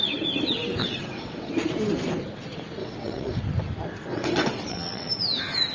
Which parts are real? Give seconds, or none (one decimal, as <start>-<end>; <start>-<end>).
0.0-0.8; 1.5-2.8; 3.4-4.1; 5.1-5.7